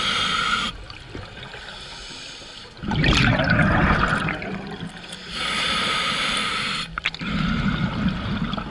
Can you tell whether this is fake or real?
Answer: real